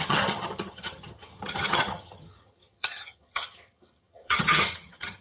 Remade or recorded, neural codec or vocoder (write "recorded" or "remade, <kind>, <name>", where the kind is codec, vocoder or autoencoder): remade, vocoder, HiFi-GAN